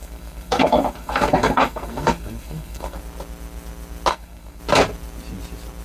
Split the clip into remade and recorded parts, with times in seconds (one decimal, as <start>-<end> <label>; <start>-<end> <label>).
0.0-3.0 remade; 3.0-4.1 recorded; 4.1-4.6 remade; 4.6-5.8 recorded